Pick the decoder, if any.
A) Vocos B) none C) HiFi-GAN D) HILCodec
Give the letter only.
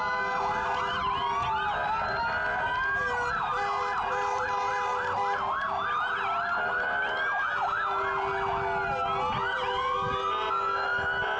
B